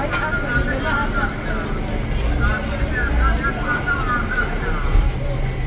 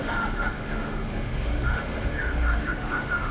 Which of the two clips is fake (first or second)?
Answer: second